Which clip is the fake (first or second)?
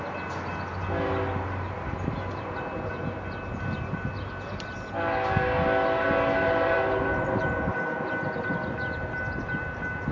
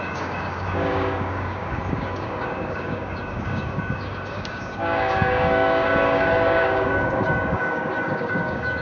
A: second